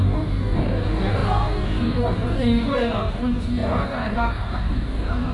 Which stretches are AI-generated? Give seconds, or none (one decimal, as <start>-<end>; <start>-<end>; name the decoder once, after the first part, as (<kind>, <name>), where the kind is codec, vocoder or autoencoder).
0.0-5.3 (codec, DAC)